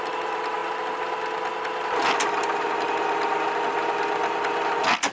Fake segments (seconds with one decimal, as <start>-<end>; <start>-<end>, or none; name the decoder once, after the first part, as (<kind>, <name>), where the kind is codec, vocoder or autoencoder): none